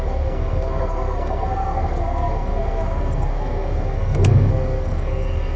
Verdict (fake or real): fake